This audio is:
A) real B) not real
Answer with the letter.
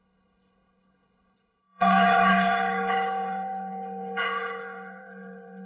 B